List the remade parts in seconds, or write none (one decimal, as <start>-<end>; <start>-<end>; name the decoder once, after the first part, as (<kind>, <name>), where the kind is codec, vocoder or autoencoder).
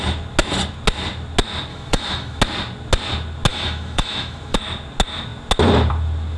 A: 1.7-2.4 (autoencoder, DAC-VAE); 3.5-4.6